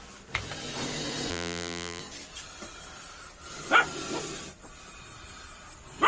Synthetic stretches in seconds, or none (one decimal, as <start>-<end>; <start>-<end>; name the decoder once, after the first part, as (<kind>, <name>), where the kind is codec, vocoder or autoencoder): 1.3-2.0 (vocoder, BigVGAN v2)